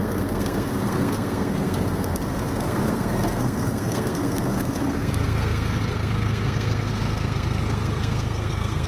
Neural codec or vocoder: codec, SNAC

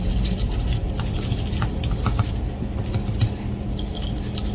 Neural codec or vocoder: none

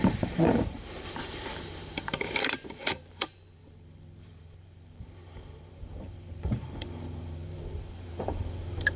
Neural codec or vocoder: vocoder, BigVGAN v2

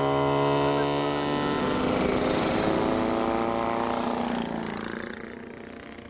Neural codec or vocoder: none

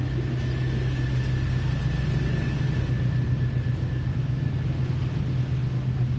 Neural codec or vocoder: none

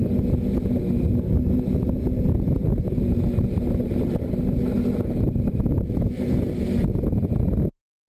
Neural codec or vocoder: none